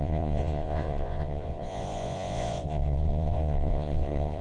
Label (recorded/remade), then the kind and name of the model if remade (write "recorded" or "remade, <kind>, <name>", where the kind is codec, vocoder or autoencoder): remade, vocoder, Vocos